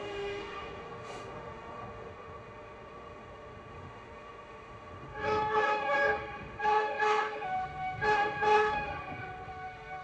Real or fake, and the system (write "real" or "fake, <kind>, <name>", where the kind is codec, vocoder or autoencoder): fake, autoencoder, DAC-VAE